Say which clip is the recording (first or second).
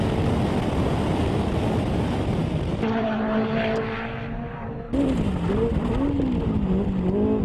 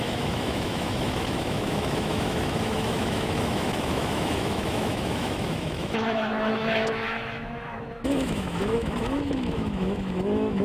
first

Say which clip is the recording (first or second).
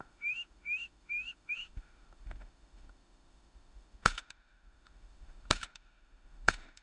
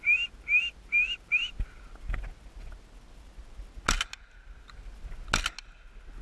second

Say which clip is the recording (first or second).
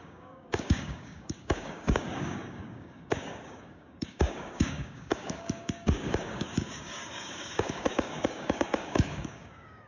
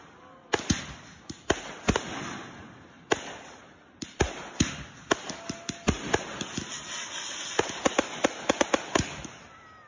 second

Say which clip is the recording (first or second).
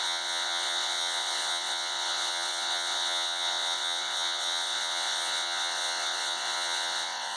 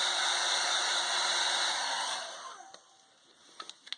second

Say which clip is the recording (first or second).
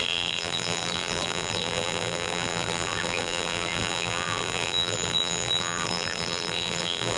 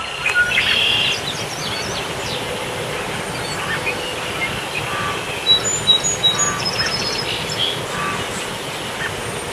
second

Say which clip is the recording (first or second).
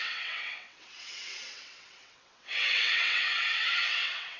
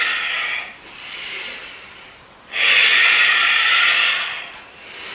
second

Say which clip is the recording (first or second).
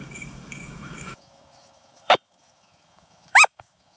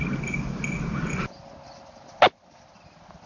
second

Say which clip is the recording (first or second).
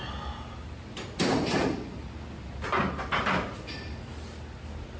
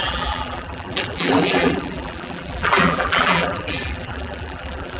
first